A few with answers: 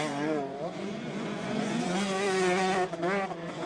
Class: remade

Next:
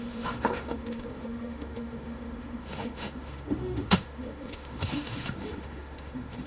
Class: remade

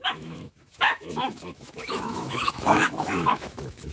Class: remade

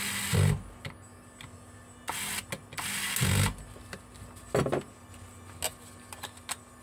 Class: recorded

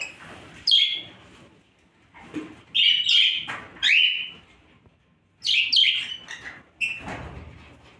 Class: recorded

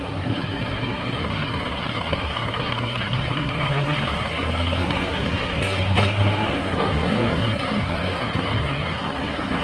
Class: remade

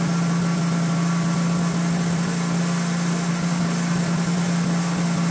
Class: recorded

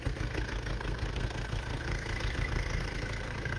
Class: remade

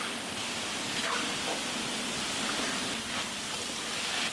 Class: recorded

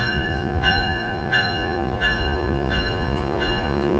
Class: remade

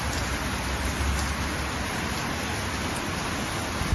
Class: recorded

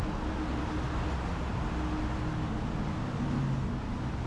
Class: recorded